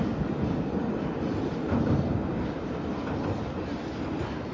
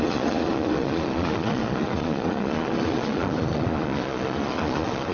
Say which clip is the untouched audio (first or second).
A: first